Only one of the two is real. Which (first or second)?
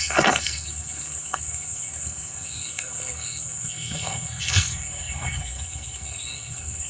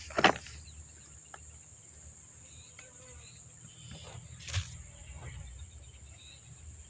second